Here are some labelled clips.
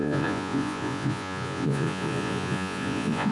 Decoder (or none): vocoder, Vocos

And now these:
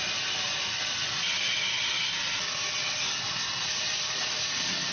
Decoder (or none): none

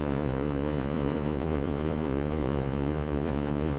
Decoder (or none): vocoder, Vocos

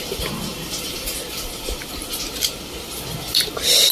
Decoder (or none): none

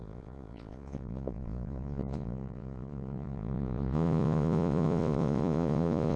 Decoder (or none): vocoder, Vocos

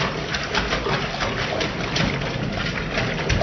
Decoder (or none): none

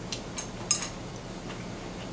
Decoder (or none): none